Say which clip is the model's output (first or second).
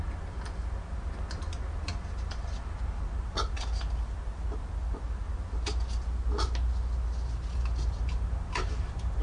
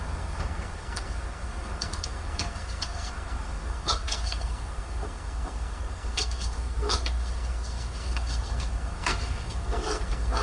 second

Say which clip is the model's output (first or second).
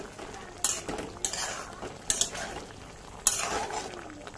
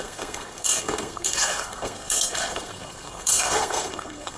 second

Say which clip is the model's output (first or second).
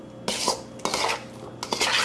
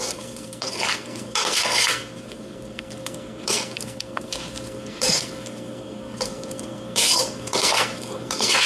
second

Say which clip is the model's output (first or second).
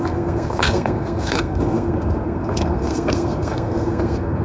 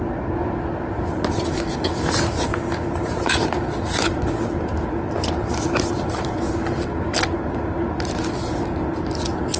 first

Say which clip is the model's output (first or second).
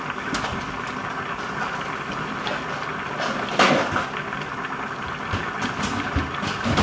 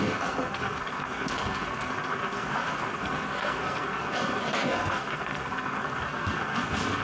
second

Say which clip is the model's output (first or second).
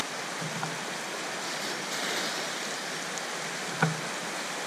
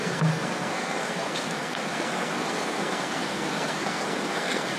second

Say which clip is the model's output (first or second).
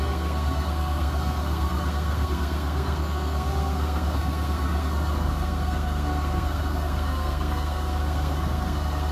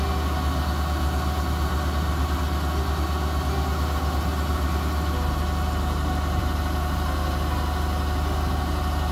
first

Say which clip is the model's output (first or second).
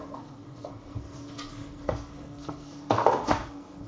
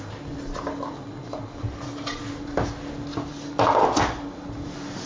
first